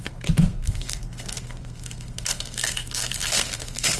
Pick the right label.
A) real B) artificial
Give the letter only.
B